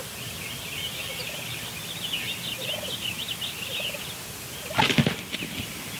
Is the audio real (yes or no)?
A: yes